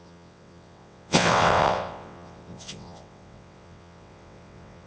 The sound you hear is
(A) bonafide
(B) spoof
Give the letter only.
B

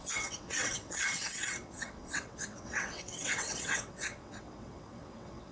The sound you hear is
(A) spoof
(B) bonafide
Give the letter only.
A